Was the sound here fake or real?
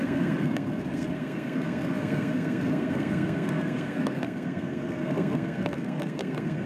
fake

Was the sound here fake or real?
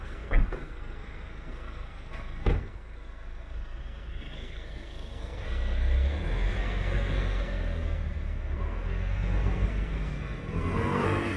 fake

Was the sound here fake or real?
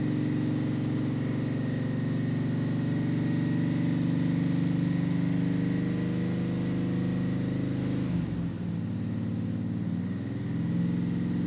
real